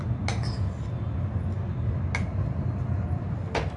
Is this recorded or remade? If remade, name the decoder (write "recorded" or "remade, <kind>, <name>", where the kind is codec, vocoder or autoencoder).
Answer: recorded